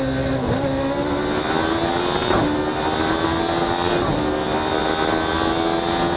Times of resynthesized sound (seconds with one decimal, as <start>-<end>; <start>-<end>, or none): none